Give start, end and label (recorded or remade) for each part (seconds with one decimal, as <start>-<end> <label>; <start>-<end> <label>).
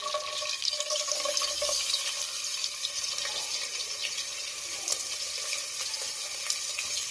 0.0-0.6 recorded; 0.6-2.0 remade; 2.0-7.1 recorded